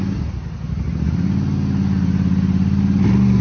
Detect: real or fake real